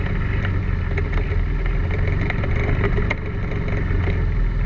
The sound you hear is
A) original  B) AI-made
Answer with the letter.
A